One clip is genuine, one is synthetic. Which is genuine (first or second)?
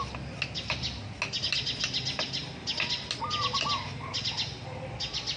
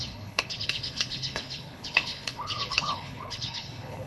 first